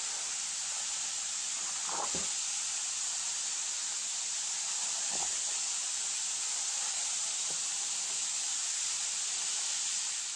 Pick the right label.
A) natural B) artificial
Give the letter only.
A